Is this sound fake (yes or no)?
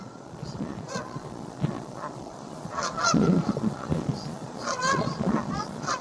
yes